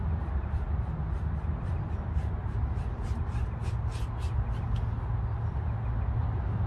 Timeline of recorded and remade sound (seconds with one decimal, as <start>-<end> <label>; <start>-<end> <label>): 0.0-6.7 recorded